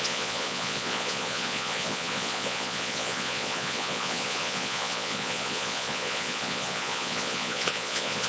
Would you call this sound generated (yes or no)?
yes